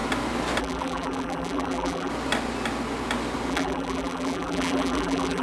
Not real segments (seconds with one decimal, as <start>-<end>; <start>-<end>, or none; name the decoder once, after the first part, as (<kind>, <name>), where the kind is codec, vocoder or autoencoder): 0.6-2.1 (vocoder, BigVGAN v2); 3.5-5.4